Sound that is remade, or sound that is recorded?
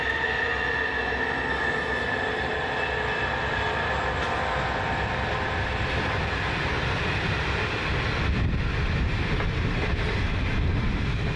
recorded